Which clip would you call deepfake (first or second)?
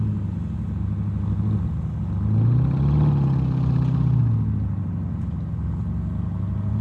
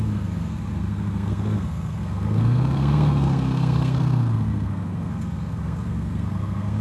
second